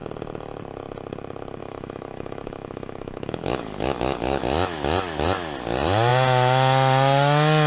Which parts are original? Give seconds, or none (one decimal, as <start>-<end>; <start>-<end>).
0.0-1.6; 4.4-7.7